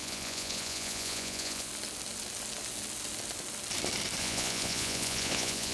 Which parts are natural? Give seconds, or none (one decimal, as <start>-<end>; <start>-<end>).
1.7-4.2